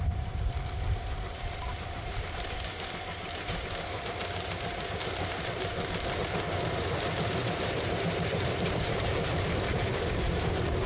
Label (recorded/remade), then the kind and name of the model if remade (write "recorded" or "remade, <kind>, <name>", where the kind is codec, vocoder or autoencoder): remade, vocoder, BigVGAN v2